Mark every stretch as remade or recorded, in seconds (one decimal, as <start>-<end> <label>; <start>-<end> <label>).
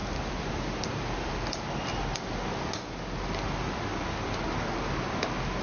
0.0-1.3 remade; 1.3-3.9 recorded; 3.9-4.4 remade; 4.4-5.6 recorded